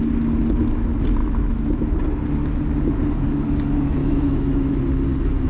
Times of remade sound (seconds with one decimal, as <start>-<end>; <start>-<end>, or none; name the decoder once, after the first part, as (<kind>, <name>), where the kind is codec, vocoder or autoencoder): 1.2-1.9 (autoencoder, DAC-VAE); 4.0-4.8